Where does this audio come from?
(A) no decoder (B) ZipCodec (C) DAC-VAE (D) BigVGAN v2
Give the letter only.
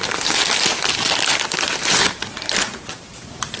A